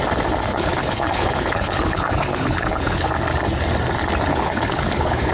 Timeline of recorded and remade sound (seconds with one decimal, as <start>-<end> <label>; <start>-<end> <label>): 0.0-0.5 recorded; 0.5-3.1 remade; 3.1-4.3 recorded; 4.3-5.3 remade